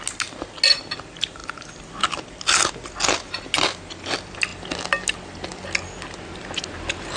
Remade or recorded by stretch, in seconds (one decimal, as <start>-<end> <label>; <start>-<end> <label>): 0.0-7.2 recorded